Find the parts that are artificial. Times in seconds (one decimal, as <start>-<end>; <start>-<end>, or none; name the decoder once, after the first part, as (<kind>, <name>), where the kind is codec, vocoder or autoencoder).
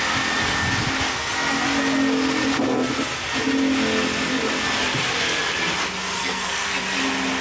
6.2-6.8 (codec, SNAC)